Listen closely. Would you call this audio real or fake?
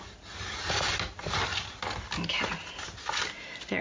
real